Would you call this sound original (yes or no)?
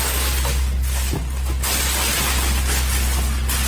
yes